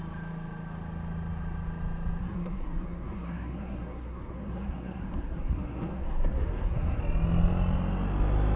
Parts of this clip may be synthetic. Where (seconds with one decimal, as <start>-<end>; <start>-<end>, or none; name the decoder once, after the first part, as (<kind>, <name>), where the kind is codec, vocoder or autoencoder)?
2.2-7.0 (codec, SNAC)